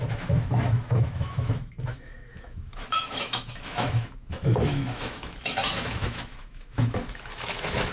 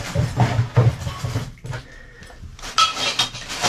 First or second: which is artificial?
first